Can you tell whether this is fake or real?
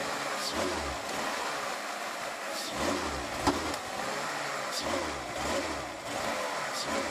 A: real